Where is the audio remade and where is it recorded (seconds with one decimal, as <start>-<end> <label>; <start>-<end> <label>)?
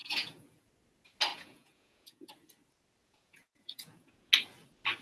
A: 0.0-0.7 remade; 0.7-1.3 recorded; 1.3-2.3 remade; 2.3-3.0 recorded; 3.0-4.3 remade; 4.3-5.0 recorded